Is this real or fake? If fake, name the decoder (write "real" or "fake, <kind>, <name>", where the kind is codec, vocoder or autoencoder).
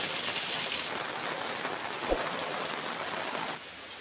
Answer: real